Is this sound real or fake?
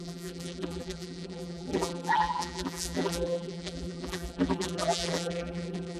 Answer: fake